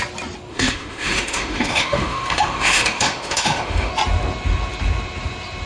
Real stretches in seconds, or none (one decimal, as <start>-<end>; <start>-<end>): 0.0-0.5; 3.9-5.7